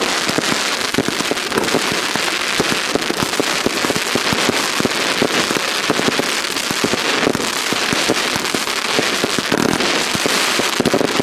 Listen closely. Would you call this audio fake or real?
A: real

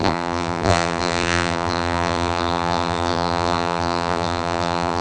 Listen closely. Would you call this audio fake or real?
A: fake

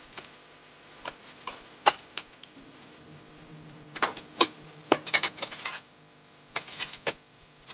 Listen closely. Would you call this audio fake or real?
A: fake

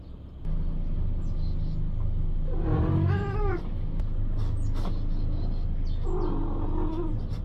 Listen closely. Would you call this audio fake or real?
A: real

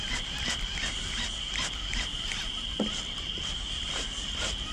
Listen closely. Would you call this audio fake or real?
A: real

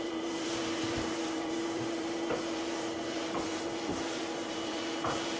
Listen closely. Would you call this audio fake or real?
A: fake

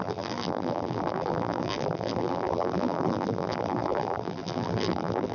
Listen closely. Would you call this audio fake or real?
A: fake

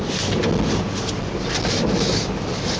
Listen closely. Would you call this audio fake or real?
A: real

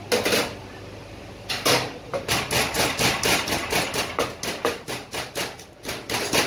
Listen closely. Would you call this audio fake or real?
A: real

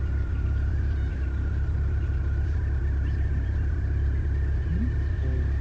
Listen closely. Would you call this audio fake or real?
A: fake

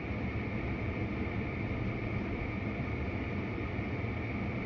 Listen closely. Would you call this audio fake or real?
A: real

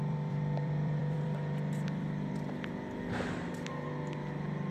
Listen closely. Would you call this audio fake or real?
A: fake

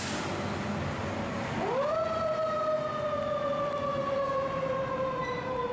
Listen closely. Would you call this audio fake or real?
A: real